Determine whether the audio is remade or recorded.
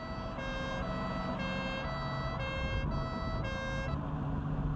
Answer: recorded